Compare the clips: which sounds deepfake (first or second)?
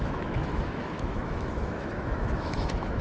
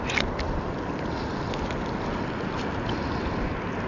first